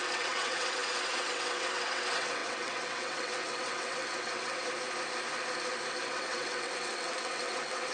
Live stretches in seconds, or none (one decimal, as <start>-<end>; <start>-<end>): 4.6-6.0